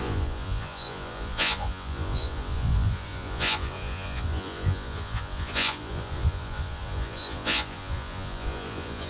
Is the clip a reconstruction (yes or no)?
yes